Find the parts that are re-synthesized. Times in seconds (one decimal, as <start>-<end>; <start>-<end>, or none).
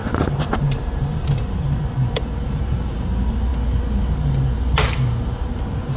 0.0-3.5; 5.4-6.0